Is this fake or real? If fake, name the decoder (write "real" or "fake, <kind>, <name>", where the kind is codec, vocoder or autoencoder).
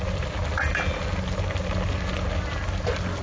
real